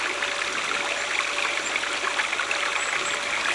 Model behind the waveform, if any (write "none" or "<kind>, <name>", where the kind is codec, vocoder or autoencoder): none